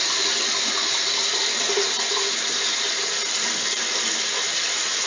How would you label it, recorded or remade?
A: recorded